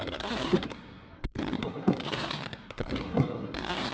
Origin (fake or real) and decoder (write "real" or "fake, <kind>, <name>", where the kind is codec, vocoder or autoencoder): fake, codec, SNAC